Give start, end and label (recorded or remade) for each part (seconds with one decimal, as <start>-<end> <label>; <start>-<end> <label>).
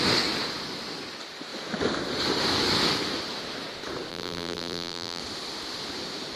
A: 0.0-4.1 recorded; 4.1-5.2 remade; 5.2-6.4 recorded